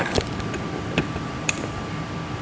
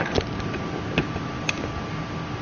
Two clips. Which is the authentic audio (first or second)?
second